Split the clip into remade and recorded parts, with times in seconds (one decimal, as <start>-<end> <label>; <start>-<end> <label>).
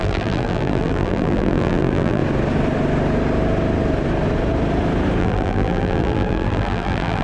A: 0.0-2.2 remade; 2.2-5.2 recorded; 5.2-7.2 remade